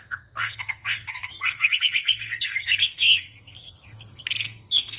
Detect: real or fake fake